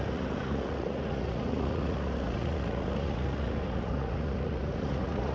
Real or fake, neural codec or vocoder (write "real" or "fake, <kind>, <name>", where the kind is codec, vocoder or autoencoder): fake, vocoder, Vocos